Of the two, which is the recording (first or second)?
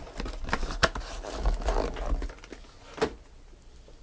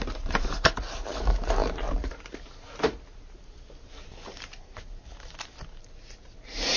first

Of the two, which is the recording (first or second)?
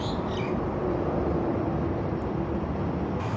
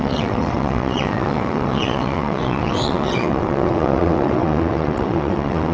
first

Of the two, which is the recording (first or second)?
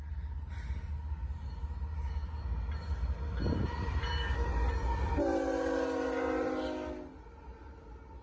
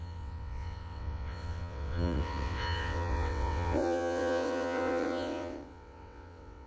first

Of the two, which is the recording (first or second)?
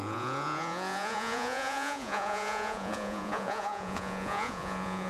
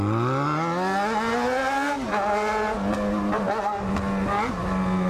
second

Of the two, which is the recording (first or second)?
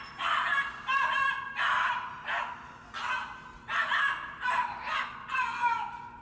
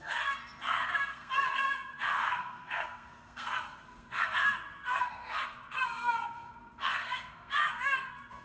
first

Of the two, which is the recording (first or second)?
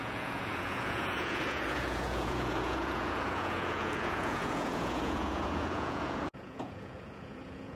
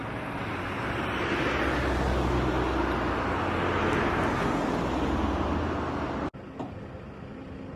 second